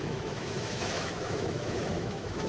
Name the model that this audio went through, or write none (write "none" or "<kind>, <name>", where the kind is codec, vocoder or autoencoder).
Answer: autoencoder, DAC-VAE